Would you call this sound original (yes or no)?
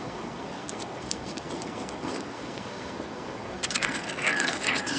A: no